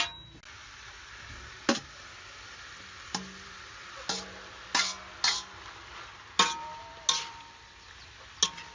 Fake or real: real